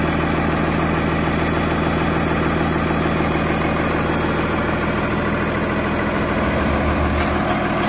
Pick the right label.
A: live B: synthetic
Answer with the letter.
A